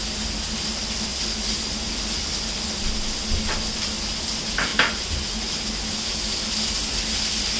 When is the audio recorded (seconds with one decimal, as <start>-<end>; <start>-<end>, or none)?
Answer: 0.0-7.6